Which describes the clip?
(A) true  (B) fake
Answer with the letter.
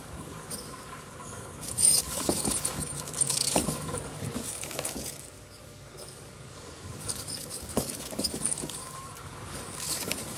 B